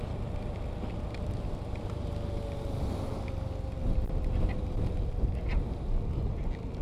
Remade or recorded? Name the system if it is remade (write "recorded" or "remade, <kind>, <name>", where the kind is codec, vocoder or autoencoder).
recorded